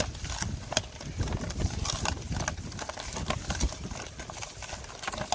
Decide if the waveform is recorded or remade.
recorded